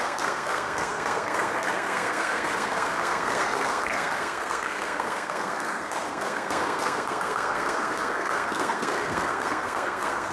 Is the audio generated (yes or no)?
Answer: yes